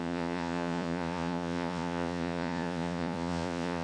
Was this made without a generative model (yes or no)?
no